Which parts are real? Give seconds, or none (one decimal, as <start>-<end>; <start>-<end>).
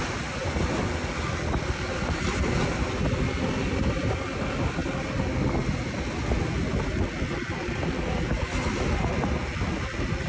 0.0-10.3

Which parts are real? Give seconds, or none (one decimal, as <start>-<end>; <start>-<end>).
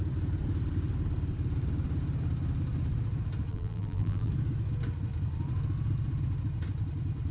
0.0-3.5; 4.3-7.3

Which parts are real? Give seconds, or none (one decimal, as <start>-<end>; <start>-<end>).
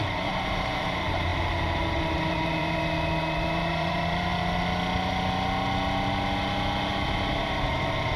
4.3-7.4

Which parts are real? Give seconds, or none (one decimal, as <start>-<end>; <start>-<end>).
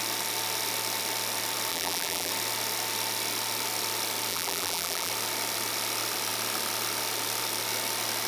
0.0-1.7; 2.3-4.3; 5.1-8.3